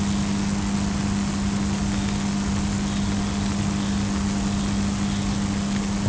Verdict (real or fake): real